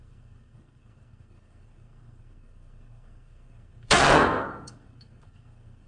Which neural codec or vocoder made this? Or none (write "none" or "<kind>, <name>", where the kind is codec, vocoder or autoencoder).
codec, SNAC